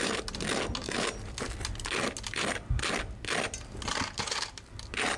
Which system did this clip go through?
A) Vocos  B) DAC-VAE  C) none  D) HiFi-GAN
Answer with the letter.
C